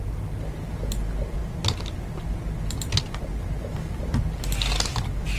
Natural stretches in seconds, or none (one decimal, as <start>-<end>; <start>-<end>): 0.0-5.4

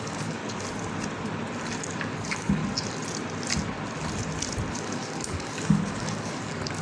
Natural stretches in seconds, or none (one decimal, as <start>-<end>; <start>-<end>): 0.4-2.0; 2.6-4.7

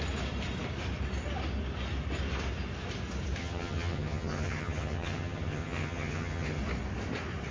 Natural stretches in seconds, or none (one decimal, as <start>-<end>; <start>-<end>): 0.0-3.4; 6.6-7.5

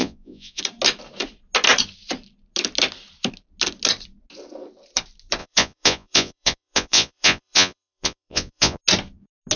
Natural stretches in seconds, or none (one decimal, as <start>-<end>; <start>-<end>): 0.6-5.4; 8.8-9.6